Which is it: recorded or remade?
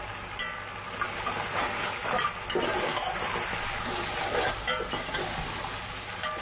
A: recorded